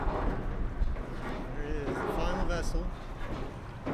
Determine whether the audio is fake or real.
real